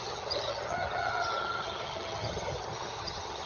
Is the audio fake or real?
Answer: fake